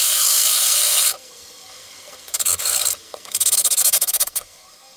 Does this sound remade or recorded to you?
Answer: remade